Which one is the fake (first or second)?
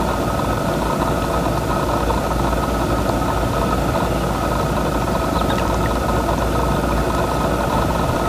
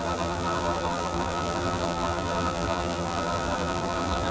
second